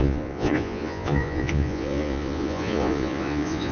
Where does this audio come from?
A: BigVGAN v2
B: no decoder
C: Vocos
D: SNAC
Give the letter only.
C